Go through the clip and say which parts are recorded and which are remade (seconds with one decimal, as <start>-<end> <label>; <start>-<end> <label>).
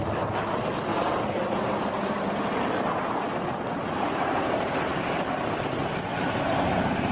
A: 0.0-0.9 recorded; 0.9-5.2 remade; 5.2-6.1 recorded; 6.1-7.1 remade